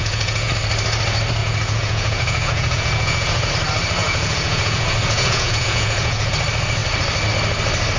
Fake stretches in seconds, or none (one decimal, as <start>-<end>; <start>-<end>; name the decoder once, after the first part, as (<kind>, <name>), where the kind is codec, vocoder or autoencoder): 0.0-0.5 (vocoder, Vocos); 1.4-3.5; 4.0-6.3

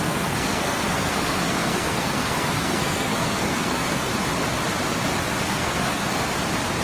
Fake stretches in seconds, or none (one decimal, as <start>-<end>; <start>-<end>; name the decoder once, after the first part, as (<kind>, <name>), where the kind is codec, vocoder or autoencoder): 0.0-4.1 (codec, SNAC); 5.4-6.0

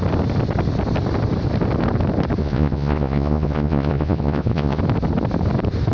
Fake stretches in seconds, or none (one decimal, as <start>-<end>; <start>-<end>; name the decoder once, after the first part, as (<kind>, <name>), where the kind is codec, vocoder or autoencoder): 2.4-4.8 (vocoder, Vocos)

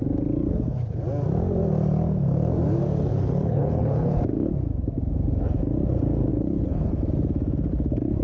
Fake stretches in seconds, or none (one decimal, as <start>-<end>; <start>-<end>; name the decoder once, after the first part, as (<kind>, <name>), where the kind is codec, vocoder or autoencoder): 3.1-4.2 (codec, HILCodec); 6.3-6.9